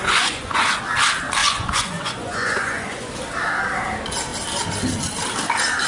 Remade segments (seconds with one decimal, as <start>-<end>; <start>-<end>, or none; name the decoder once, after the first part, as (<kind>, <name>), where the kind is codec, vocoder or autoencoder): 0.0-0.8 (vocoder, Vocos); 1.4-3.1